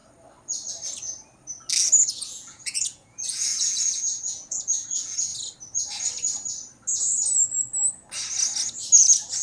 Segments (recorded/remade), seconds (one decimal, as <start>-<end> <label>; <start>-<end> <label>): 0.0-2.1 recorded; 2.1-5.3 remade; 5.3-9.0 recorded; 9.0-9.4 remade